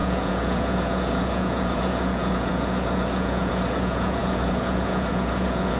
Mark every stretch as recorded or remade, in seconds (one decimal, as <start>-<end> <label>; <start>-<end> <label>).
0.0-5.8 remade